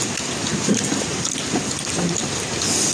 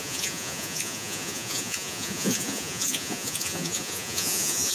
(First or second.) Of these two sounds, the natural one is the first